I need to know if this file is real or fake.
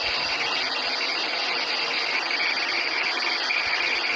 real